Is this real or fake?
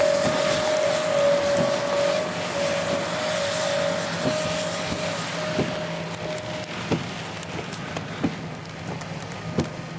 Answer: real